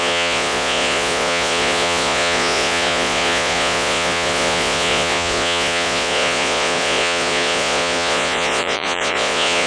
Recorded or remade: remade